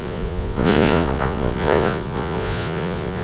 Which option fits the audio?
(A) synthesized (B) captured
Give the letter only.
A